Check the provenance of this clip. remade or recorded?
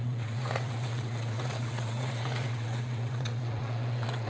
remade